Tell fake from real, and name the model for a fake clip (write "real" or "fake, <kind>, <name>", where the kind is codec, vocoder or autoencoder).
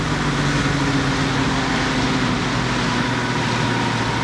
real